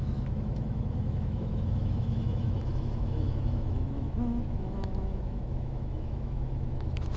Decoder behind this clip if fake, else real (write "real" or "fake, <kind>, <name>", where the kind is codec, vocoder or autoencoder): fake, autoencoder, DAC-VAE